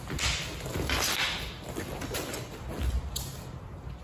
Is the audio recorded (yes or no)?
yes